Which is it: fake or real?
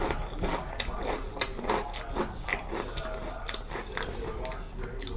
real